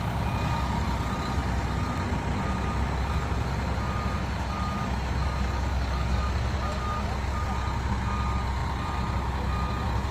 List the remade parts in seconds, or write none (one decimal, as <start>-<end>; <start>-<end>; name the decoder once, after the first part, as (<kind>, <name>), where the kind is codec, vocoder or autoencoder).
5.2-6.2 (codec, DAC)